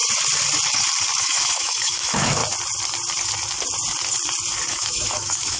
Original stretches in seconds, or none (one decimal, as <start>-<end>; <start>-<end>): 0.0-1.2; 2.4-4.7